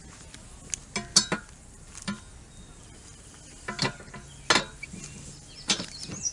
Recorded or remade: recorded